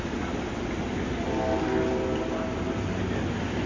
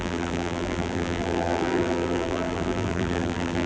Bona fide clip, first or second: first